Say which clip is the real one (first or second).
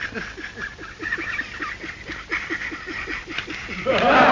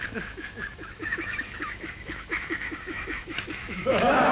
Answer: first